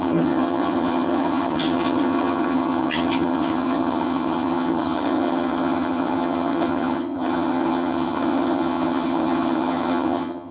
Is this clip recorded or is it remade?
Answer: remade